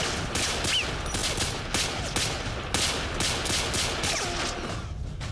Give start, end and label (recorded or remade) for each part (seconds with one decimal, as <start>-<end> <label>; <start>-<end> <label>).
0.0-5.3 recorded